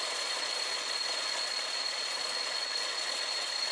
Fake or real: fake